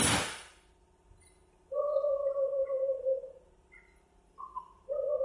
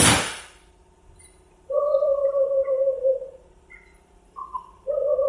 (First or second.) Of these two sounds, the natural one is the first